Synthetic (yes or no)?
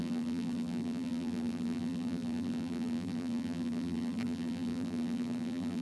yes